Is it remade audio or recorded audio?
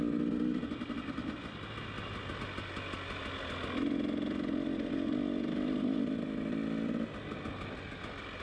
recorded